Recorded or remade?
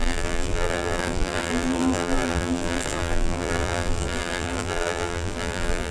remade